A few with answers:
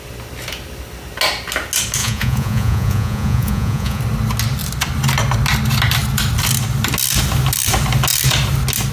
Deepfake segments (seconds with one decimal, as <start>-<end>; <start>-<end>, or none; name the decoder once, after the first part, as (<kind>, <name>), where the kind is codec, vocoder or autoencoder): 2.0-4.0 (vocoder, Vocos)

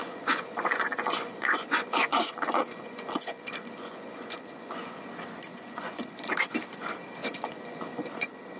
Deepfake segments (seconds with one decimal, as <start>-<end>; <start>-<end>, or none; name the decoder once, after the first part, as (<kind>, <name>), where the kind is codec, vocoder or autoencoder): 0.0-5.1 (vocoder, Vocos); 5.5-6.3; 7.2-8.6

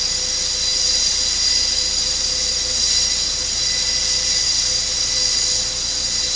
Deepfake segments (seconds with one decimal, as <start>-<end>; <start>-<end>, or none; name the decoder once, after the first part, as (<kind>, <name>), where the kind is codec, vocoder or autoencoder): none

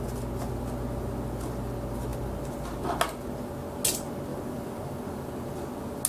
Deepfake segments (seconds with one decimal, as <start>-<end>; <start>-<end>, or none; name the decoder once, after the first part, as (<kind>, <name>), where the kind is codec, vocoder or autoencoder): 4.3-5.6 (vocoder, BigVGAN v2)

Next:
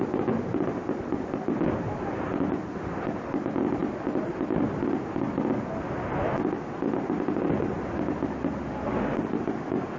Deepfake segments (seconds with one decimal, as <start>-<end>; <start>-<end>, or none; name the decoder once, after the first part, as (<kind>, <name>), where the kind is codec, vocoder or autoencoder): 0.8-2.2 (vocoder, BigVGAN v2)